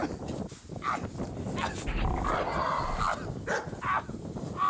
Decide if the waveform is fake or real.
real